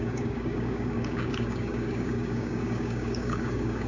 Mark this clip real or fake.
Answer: fake